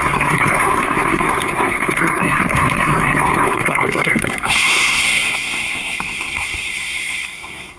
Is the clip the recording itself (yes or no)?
no